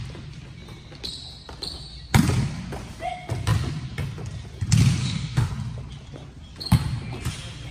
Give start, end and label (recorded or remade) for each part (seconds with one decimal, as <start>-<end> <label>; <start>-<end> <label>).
0.0-5.0 recorded; 5.0-5.5 remade; 5.5-7.7 recorded